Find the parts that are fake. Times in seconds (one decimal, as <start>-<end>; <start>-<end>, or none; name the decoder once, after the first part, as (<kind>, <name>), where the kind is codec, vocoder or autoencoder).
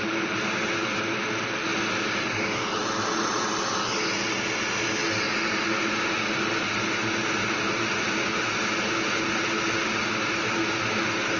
none